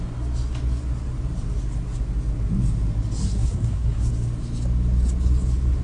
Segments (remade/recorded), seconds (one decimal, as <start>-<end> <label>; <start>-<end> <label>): 0.0-3.2 recorded; 3.2-4.1 remade; 4.1-5.8 recorded